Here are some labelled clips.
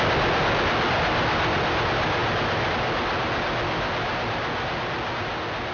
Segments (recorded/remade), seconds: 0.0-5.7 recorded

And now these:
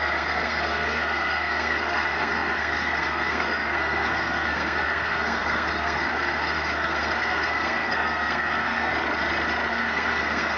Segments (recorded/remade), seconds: 0.0-8.9 remade; 8.9-9.7 recorded; 9.7-10.6 remade

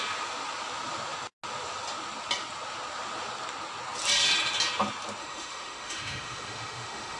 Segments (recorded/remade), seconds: 0.0-5.2 recorded; 5.2-7.2 remade

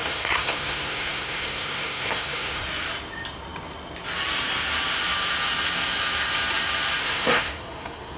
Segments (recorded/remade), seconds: 0.0-2.6 remade; 2.6-7.0 recorded; 7.0-8.2 remade